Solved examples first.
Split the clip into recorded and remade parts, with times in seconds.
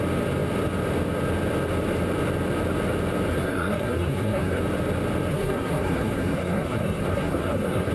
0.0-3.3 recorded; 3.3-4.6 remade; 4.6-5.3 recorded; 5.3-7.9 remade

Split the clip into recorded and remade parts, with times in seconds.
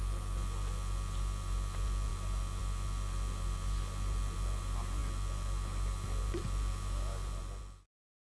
0.0-8.3 recorded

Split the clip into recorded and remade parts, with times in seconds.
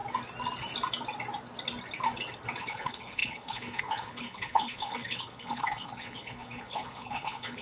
0.0-2.6 recorded; 2.6-7.6 remade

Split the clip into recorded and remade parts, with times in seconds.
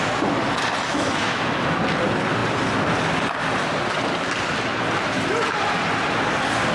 0.0-0.9 recorded; 0.9-1.8 remade; 1.8-6.7 recorded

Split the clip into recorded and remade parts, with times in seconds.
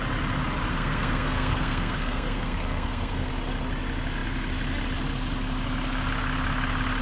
0.0-0.7 recorded; 0.7-3.3 remade; 3.3-7.0 recorded